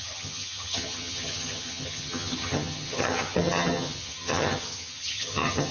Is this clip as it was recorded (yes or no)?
no